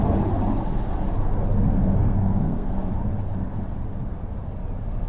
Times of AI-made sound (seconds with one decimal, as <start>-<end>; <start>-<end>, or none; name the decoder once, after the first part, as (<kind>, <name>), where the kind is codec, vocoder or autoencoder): 1.8-2.9 (codec, SNAC)